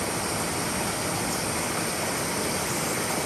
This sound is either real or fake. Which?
real